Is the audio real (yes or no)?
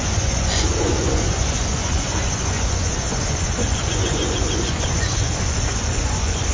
no